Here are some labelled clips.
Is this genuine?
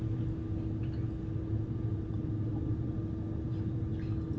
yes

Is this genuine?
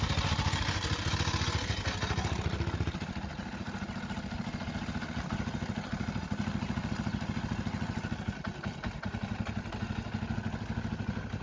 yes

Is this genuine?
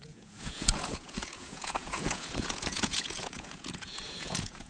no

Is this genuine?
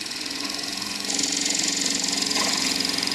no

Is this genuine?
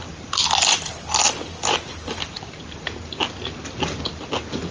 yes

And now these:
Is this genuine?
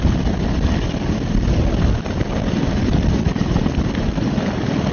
yes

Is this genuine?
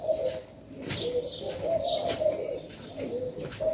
yes